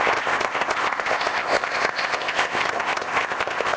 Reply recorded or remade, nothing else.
remade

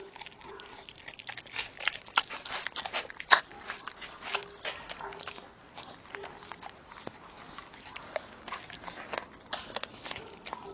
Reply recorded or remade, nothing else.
recorded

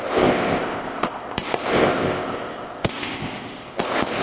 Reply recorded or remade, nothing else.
remade